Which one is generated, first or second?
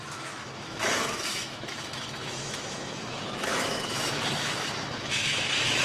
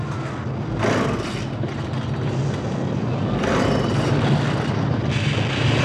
first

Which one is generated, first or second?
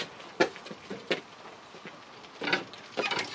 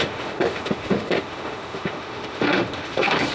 second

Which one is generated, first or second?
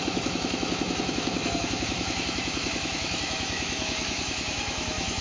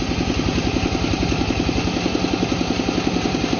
first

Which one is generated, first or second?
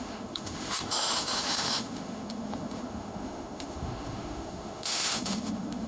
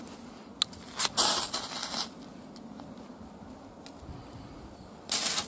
first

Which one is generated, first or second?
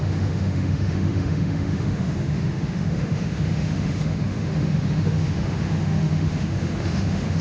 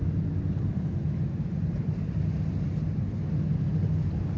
first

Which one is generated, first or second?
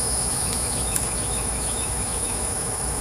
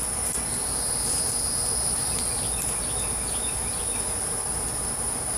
first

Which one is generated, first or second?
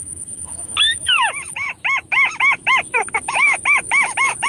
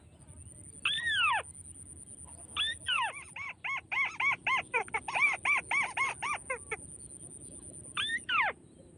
first